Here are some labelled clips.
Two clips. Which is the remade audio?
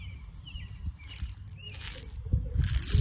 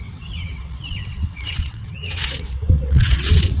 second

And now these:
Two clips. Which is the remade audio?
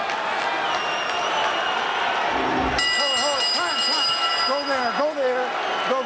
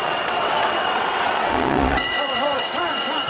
second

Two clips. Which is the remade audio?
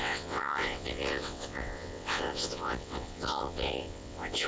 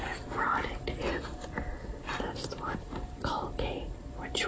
first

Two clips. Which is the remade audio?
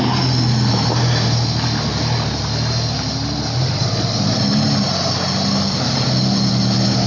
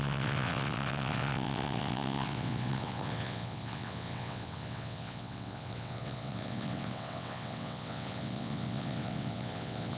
second